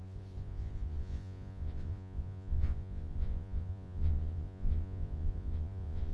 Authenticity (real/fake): fake